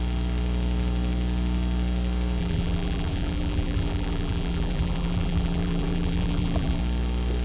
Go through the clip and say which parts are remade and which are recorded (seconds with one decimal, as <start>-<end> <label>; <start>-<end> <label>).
0.0-2.4 recorded; 2.4-6.8 remade; 6.8-7.4 recorded